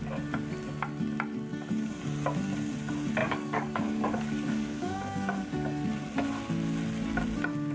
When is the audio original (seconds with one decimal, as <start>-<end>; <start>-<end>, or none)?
0.0-1.5; 2.0-3.2; 5.9-7.7